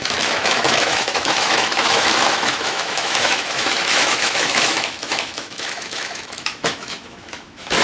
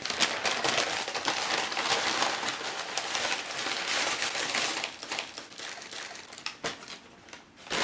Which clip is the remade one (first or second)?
first